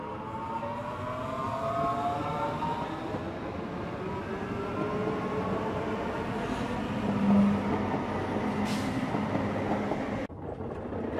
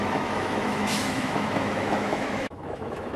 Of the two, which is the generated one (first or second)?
second